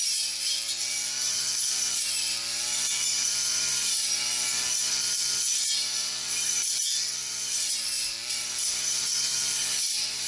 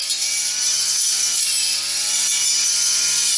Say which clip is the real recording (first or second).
second